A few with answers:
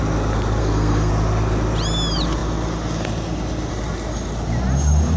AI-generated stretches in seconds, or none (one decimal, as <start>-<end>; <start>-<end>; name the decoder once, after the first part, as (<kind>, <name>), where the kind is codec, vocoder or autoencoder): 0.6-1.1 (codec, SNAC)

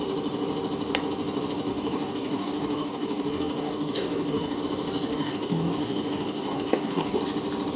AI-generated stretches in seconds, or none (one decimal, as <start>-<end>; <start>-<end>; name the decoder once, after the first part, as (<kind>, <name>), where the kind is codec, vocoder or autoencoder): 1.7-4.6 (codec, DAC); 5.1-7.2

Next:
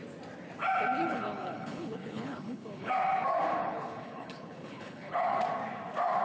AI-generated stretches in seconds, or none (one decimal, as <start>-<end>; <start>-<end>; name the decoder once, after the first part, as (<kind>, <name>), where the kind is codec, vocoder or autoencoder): 1.0-2.9 (codec, HILCodec); 3.6-5.2